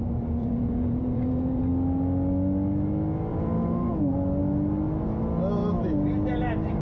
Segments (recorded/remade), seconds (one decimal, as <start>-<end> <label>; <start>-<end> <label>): 0.0-0.4 recorded; 0.4-1.6 remade; 1.6-3.3 recorded; 3.3-4.0 remade; 4.0-6.8 recorded